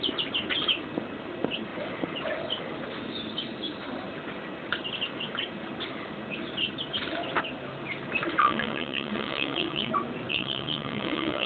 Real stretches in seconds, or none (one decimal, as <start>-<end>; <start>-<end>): 0.0-8.4; 9.9-10.3